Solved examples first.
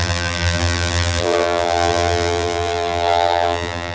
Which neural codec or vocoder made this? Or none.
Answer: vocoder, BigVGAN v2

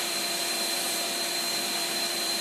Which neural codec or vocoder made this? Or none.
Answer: vocoder, BigVGAN v2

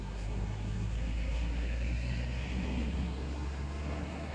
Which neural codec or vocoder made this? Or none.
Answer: codec, SNAC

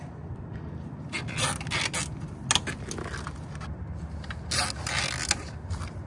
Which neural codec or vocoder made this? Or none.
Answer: none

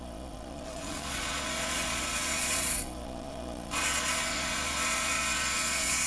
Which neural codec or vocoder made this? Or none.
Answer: vocoder, Vocos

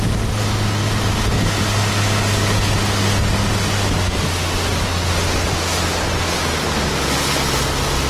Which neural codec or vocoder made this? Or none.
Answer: none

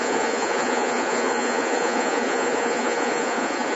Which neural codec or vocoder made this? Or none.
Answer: vocoder, Vocos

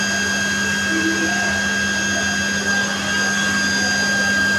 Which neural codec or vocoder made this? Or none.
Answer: none